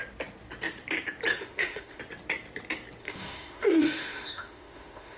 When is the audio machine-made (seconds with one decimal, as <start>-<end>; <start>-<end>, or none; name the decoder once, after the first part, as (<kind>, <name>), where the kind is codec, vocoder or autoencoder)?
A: 1.3-2.0 (autoencoder, DAC-VAE); 3.0-5.2